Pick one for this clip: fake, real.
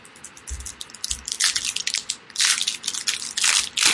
real